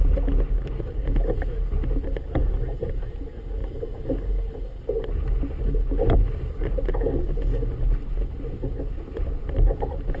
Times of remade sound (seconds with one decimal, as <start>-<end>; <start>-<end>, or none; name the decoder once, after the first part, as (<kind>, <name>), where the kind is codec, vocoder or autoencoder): none